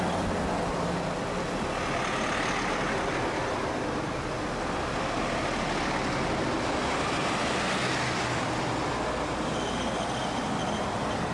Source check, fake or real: real